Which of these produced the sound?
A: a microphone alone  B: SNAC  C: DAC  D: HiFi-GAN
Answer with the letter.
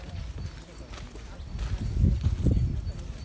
A